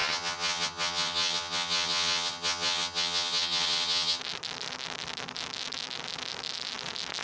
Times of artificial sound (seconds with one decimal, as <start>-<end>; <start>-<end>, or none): 0.0-4.2